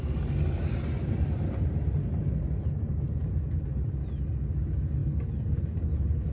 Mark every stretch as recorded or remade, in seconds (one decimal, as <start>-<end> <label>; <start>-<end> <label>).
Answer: 0.0-6.3 recorded